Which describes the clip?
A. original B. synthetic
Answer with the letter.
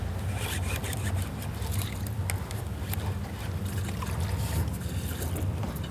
A